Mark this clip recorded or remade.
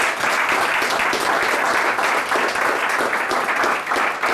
recorded